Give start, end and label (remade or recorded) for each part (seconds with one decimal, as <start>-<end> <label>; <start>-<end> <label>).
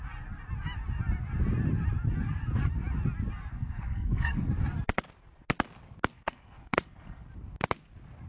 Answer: 0.0-3.5 recorded; 3.5-4.5 remade; 4.5-6.1 recorded; 6.1-7.3 remade; 7.3-8.3 recorded